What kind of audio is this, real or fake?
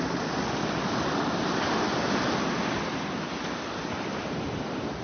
real